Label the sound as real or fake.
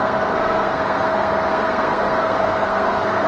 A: fake